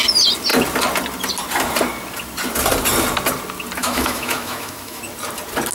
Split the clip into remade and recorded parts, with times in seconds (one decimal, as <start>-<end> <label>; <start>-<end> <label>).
0.0-3.8 recorded; 3.8-5.0 remade; 5.0-5.7 recorded